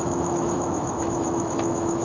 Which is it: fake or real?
fake